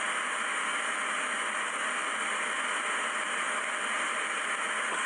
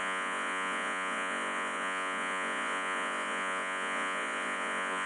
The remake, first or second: second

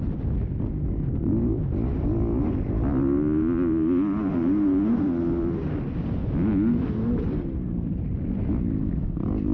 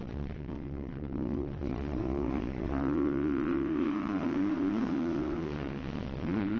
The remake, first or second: second